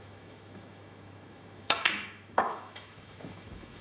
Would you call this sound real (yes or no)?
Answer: no